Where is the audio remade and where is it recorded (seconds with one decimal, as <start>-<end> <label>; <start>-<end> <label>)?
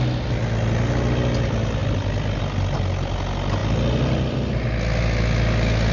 0.0-5.9 recorded